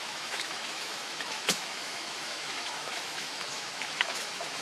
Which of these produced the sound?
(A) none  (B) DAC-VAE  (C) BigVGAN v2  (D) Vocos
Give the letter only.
B